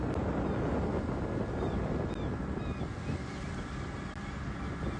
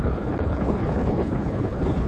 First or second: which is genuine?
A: first